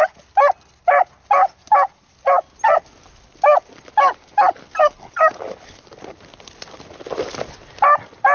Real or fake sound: real